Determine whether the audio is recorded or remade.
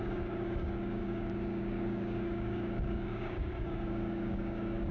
remade